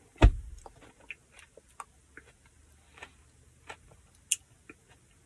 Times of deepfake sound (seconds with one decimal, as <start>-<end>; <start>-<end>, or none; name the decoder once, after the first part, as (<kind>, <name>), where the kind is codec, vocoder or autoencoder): none